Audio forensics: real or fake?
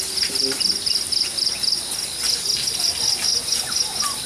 real